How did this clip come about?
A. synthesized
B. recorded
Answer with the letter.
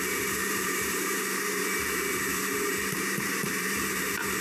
A